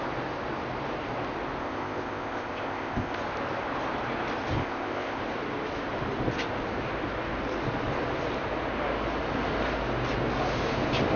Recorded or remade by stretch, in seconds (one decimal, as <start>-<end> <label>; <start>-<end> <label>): 0.0-1.6 recorded; 1.6-3.2 remade; 3.2-4.6 recorded; 4.6-5.2 remade; 5.2-11.2 recorded